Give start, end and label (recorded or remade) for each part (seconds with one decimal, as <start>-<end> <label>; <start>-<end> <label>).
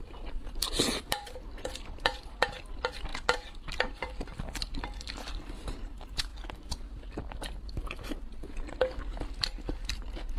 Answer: 0.0-6.3 remade; 6.3-9.6 recorded; 9.6-10.4 remade